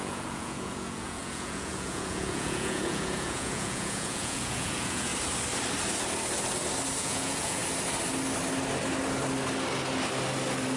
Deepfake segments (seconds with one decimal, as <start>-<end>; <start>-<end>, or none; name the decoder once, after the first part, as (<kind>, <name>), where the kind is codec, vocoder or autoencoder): 0.0-5.1 (vocoder, Vocos); 7.0-7.6